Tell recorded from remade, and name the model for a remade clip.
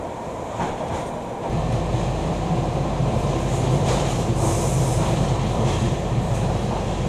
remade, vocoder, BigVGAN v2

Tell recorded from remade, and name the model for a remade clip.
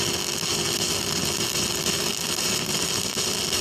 recorded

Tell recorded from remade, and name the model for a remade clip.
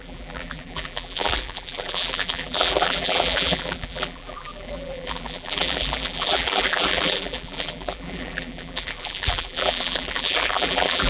remade, vocoder, BigVGAN v2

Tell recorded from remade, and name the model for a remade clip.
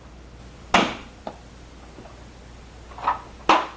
recorded